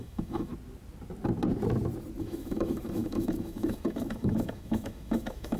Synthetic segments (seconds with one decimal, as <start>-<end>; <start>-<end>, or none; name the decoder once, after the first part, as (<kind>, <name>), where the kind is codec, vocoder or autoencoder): 0.0-0.5 (autoencoder, DAC-VAE); 2.2-5.6